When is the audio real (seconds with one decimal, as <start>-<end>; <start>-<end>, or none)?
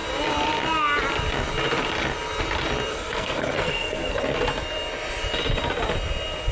0.0-2.9; 4.2-6.5